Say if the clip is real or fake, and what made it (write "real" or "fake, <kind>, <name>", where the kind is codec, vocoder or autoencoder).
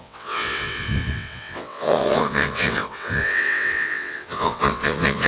fake, vocoder, WaveNeXt